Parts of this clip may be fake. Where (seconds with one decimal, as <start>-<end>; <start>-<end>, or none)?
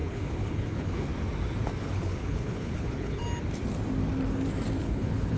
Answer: 0.0-1.1; 1.8-3.2; 4.8-5.4